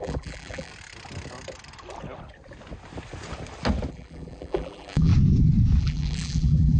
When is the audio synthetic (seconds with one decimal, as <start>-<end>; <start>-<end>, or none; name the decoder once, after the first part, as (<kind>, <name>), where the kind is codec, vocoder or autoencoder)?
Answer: 0.0-0.7 (vocoder, BigVGAN v2); 3.9-5.1; 5.8-6.8